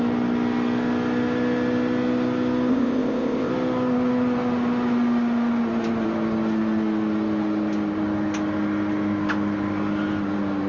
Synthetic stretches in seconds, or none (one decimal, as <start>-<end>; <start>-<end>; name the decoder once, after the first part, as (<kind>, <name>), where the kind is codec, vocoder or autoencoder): 2.7-3.5 (codec, ZipCodec)